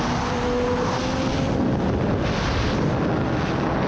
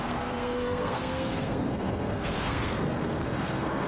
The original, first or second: first